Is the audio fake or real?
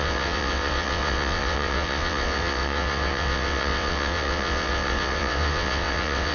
fake